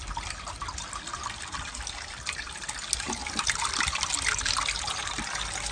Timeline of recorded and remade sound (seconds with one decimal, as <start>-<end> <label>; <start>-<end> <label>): 0.0-5.7 recorded